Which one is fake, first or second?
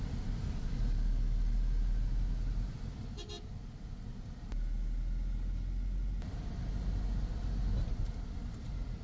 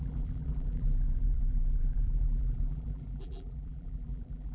second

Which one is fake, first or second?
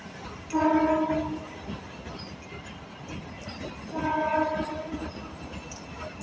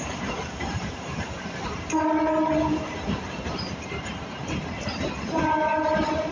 second